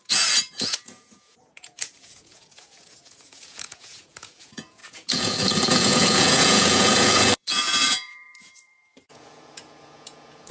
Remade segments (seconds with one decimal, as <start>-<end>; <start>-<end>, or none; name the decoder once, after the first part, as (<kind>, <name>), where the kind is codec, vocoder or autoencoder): 0.0-10.5 (vocoder, Vocos)